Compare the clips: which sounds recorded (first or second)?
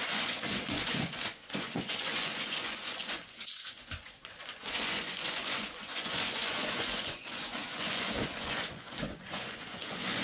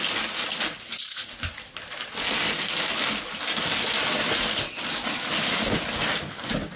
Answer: second